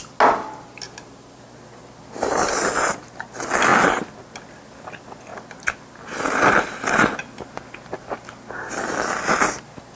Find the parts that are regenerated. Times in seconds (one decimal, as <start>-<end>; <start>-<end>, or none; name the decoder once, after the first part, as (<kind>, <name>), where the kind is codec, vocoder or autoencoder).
none